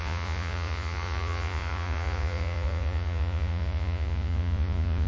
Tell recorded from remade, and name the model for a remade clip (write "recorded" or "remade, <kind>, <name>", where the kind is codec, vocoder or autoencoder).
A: remade, vocoder, Vocos